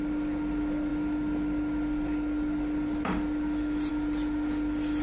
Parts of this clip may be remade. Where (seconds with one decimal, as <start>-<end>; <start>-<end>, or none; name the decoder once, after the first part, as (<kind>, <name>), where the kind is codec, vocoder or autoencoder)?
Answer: none